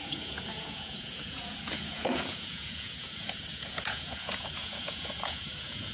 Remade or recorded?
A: remade